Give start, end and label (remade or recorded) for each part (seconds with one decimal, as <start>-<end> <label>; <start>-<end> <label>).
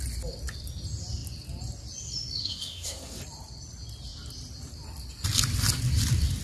0.0-2.4 recorded; 2.4-3.2 remade; 3.2-6.4 recorded